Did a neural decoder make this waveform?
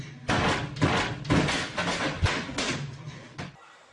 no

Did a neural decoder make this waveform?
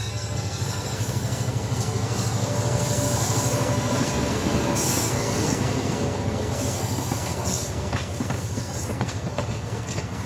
yes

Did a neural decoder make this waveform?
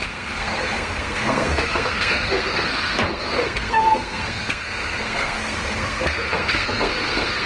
yes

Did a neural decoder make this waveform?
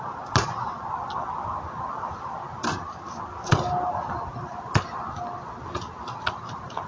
no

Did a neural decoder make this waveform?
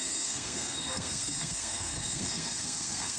yes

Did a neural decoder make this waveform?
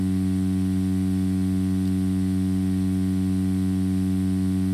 no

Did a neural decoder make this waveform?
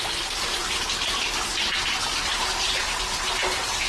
no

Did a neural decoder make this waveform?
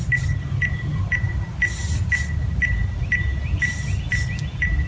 no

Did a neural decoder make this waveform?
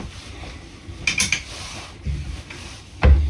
no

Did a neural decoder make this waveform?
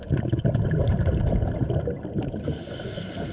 no